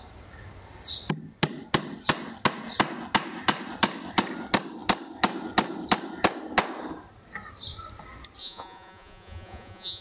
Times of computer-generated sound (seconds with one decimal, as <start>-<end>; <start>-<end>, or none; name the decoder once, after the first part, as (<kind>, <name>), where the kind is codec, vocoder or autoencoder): 8.4-10.0 (vocoder, Vocos)